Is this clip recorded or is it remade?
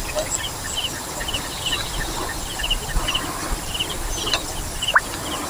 recorded